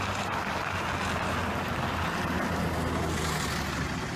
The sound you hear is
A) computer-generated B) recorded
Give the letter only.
B